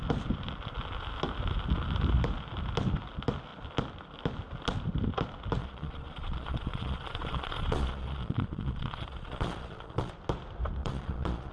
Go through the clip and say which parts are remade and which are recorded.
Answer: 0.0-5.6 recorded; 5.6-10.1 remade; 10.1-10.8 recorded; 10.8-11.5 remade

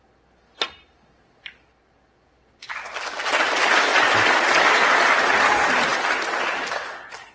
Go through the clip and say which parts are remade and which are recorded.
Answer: 0.0-7.3 recorded

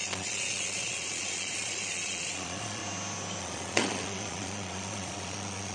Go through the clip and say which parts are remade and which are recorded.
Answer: 0.0-2.8 remade; 2.8-3.4 recorded; 3.4-5.7 remade